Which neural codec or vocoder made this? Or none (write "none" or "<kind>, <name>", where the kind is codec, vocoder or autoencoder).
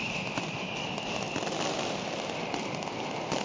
none